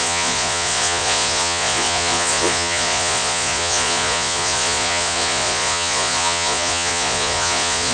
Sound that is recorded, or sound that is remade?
remade